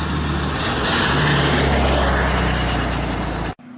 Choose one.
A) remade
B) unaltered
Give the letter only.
B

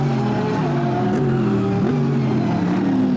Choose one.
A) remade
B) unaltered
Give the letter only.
B